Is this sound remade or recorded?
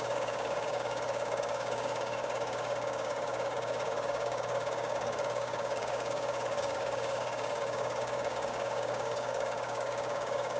remade